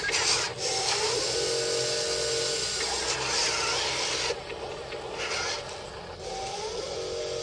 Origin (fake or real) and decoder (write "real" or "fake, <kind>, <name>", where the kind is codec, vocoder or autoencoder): real